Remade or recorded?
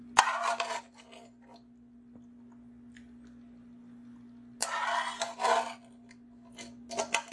recorded